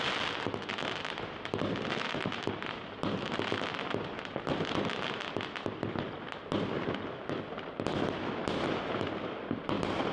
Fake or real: real